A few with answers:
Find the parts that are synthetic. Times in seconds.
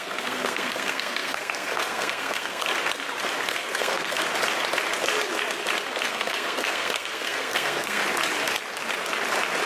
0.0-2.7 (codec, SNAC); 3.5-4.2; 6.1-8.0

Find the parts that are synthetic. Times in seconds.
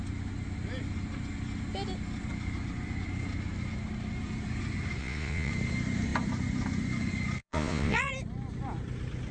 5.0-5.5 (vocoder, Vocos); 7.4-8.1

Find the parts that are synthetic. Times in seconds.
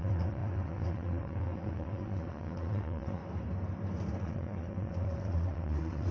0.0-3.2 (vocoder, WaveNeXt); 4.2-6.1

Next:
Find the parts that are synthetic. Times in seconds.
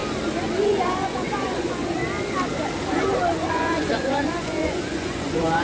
0.6-2.0 (vocoder, Vocos); 3.5-5.6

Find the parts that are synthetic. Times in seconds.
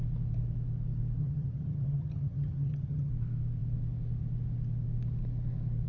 1.2-3.1 (vocoder, HiFi-GAN)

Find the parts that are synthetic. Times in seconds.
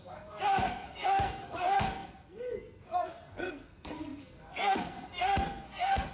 0.0-6.1 (codec, SNAC)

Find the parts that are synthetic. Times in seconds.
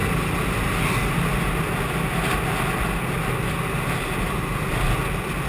none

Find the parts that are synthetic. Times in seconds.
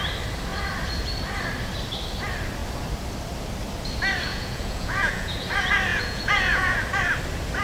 4.3-5.5 (vocoder, Vocos); 5.9-6.8